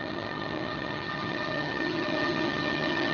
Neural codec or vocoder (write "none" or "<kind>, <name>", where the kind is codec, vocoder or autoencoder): vocoder, HiFi-GAN